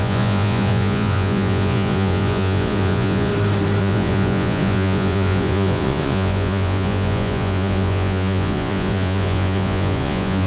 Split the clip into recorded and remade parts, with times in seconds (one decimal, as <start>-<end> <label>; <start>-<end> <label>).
0.0-3.3 remade; 3.3-3.8 recorded; 3.8-10.5 remade